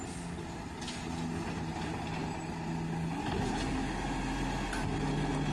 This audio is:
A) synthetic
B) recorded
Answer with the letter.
B